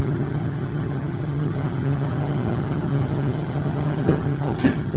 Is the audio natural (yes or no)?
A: no